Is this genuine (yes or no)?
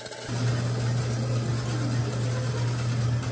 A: yes